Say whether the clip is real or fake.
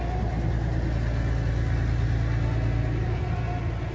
real